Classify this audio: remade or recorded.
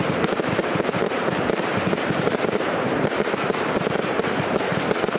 remade